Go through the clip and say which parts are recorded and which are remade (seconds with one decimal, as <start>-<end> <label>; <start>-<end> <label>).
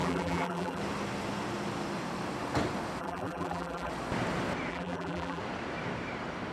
0.0-0.8 remade; 0.8-3.0 recorded; 3.0-3.9 remade; 3.9-4.7 recorded; 4.7-5.4 remade; 5.4-6.5 recorded